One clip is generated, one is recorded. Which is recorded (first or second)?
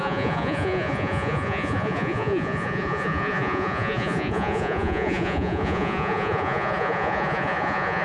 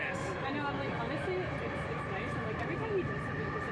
second